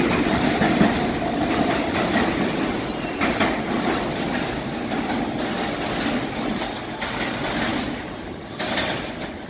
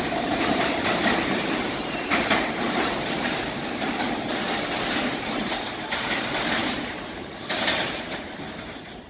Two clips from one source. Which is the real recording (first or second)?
first